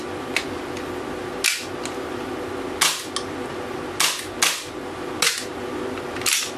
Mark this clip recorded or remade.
recorded